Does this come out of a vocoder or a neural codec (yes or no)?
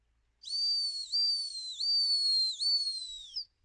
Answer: no